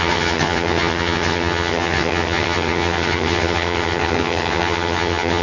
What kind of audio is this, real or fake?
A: fake